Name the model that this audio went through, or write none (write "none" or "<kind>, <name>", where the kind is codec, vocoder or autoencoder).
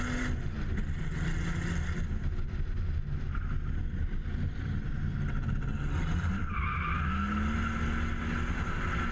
none